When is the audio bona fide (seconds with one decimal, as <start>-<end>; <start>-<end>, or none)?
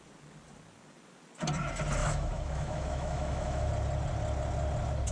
0.0-2.0; 3.7-5.1